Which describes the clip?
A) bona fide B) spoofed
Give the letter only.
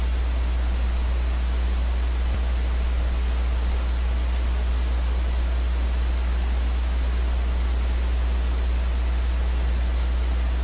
A